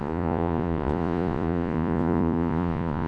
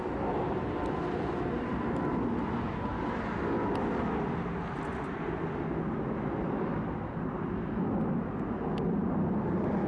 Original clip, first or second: second